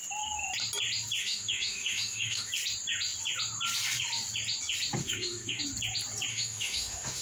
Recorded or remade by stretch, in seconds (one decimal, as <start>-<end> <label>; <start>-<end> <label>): 0.0-1.2 recorded; 1.2-2.5 remade; 2.5-5.0 recorded; 5.0-5.6 remade; 5.6-6.3 recorded; 6.3-7.2 remade